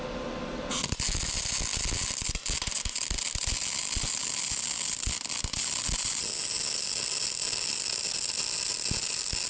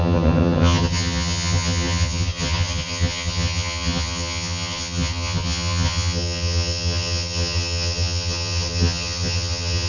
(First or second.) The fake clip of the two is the second